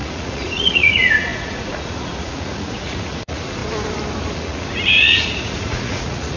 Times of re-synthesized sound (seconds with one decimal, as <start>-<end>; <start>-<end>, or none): 0.0-3.6; 4.3-6.4